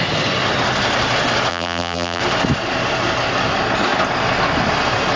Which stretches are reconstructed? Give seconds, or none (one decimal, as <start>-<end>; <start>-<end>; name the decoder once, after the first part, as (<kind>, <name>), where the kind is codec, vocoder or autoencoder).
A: 1.5-2.2 (vocoder, BigVGAN v2)